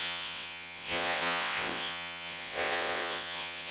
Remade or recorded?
remade